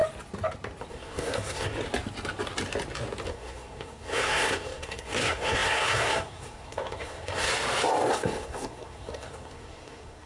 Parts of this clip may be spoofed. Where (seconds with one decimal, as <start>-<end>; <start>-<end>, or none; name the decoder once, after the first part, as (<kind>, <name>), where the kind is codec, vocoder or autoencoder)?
0.9-1.7 (codec, SNAC); 3.3-7.5; 8.1-10.3